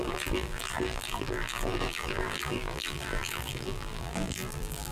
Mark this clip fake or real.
fake